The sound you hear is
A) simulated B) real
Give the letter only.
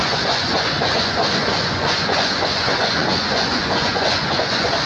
A